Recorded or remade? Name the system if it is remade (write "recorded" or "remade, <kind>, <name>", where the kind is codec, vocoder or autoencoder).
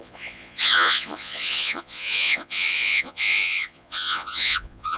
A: remade, vocoder, Vocos